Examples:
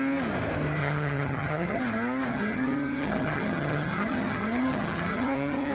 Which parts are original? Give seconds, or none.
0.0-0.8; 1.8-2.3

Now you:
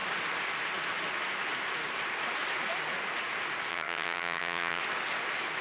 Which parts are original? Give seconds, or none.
0.0-3.7; 4.8-5.6

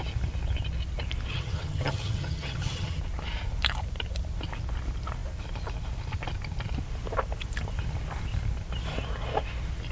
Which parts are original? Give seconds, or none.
0.0-1.3; 3.0-9.9